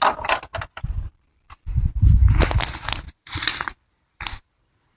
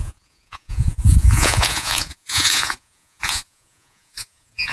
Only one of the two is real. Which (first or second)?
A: first